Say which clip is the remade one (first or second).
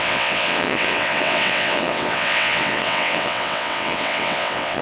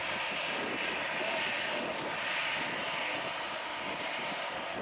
first